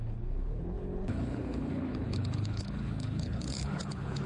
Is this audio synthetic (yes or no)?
yes